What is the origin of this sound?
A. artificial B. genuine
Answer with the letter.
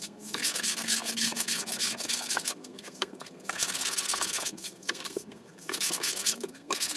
A